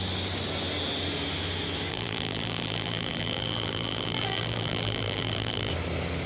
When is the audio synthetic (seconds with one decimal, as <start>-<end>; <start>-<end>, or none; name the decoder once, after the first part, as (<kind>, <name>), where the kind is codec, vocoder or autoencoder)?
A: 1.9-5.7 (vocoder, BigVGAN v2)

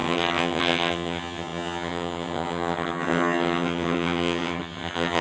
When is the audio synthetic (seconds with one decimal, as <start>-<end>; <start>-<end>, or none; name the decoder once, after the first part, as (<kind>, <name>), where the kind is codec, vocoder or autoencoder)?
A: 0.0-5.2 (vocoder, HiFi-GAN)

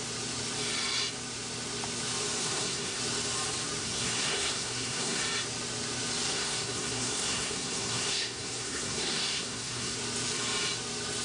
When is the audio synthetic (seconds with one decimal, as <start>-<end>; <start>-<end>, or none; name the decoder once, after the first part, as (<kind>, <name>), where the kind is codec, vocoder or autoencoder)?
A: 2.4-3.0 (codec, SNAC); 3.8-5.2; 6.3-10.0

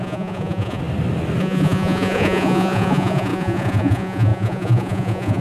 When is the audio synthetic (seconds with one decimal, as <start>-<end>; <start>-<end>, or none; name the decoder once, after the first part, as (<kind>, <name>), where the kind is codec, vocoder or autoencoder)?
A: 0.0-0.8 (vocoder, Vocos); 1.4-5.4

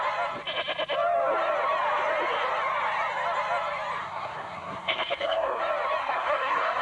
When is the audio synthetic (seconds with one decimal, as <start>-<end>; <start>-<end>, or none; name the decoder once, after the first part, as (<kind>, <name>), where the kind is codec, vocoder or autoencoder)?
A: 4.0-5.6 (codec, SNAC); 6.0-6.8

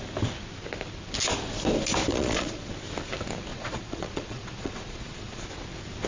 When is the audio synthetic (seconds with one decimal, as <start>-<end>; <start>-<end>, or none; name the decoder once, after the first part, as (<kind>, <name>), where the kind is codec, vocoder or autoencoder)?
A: 2.1-2.7 (vocoder, Vocos); 3.5-5.5

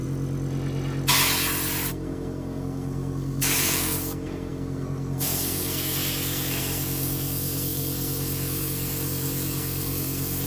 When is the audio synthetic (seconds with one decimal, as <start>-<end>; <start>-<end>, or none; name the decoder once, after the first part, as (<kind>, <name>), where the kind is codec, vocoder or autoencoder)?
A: 1.9-10.5 (codec, SNAC)

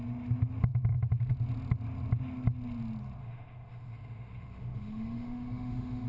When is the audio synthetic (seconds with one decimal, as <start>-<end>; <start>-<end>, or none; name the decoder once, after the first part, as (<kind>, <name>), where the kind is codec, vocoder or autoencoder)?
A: 3.2-6.1 (autoencoder, DAC-VAE)